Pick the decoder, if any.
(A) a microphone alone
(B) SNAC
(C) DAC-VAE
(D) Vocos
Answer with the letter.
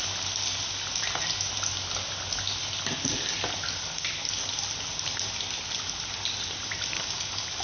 A